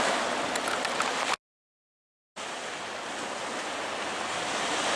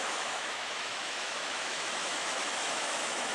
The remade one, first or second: second